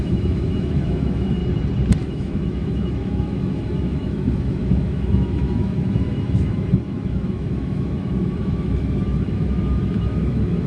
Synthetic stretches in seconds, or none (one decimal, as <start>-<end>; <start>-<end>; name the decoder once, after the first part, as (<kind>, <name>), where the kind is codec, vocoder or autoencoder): 0.0-1.4 (autoencoder, DAC-VAE); 2.0-10.7